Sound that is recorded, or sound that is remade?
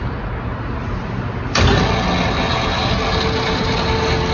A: recorded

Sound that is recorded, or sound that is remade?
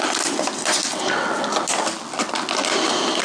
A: recorded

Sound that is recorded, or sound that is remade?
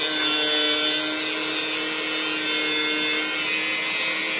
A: recorded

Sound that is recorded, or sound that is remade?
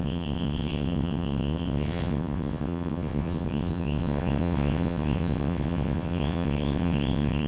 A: remade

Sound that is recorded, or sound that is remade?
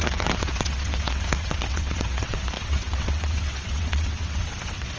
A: remade